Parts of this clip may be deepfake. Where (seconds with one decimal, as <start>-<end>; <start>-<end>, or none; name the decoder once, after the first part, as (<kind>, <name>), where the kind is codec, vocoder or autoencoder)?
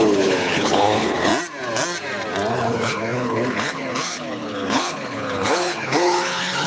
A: 0.0-1.3 (codec, HILCodec); 2.5-6.7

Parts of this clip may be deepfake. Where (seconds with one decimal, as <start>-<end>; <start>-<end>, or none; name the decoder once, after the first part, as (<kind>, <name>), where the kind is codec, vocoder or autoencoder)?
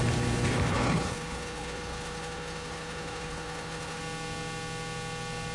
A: 0.7-4.0 (codec, HILCodec)